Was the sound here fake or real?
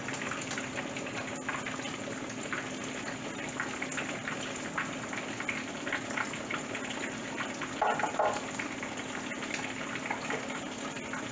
real